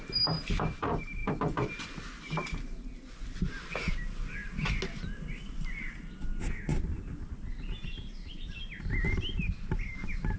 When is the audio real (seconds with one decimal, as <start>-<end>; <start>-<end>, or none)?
0.0-10.4